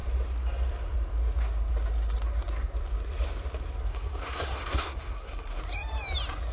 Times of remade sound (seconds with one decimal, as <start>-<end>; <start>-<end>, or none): 3.9-5.6